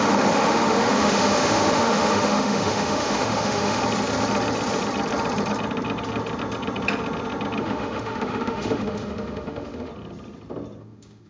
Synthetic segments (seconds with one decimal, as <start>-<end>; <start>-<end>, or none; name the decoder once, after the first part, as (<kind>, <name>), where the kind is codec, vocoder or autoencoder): 0.0-3.8 (autoencoder, DAC-VAE); 7.6-9.9; 10.8-11.3